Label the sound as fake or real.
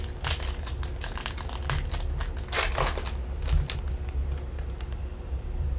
real